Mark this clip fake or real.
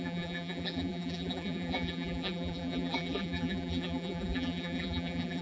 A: fake